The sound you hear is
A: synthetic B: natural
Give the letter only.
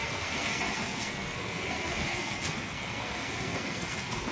A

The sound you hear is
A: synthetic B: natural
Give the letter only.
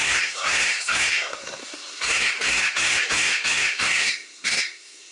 A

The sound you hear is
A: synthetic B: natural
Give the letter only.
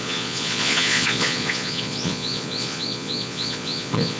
A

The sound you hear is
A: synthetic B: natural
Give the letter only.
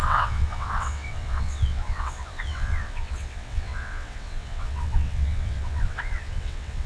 A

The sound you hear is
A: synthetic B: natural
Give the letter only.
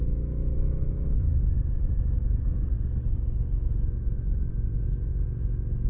B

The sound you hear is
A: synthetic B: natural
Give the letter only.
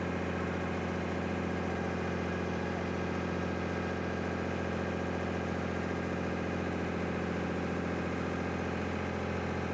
B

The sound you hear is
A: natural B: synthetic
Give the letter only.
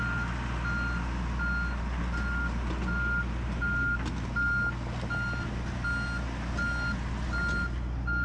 A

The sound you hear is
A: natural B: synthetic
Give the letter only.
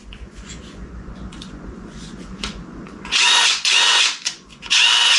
B